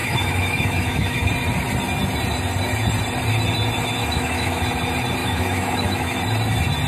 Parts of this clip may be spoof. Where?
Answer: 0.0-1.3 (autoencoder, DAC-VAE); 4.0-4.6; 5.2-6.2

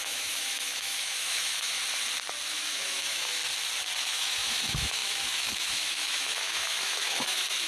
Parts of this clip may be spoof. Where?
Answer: 0.0-1.8 (autoencoder, DAC-VAE); 2.5-3.4; 4.0-7.7

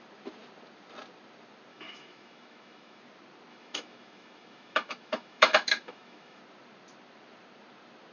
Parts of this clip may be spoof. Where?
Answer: 1.7-3.0 (autoencoder, DAC-VAE); 3.5-6.4

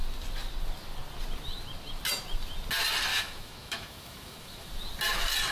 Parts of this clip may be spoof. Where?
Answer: 3.1-4.7 (autoencoder, DAC-VAE)

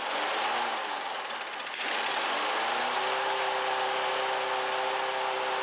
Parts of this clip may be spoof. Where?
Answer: none